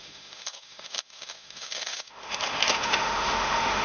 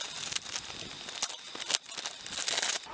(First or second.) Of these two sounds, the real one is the second